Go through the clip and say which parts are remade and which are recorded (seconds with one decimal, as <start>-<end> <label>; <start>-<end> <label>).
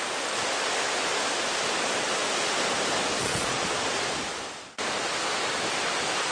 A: 0.0-3.2 recorded; 3.2-3.7 remade; 3.7-6.3 recorded